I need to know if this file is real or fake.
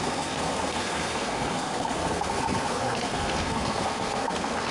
fake